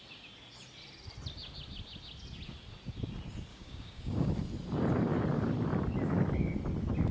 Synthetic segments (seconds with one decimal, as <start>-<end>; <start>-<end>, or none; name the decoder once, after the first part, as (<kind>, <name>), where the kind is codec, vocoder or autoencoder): 3.5-4.3 (codec, DAC)